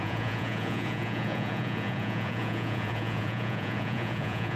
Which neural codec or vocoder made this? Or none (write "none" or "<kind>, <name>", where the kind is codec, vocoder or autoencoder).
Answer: vocoder, Vocos